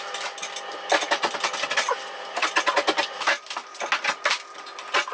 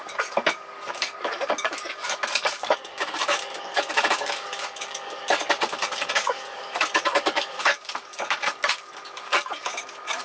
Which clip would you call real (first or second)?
first